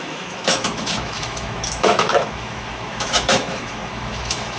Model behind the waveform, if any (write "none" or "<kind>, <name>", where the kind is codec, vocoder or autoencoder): autoencoder, DAC-VAE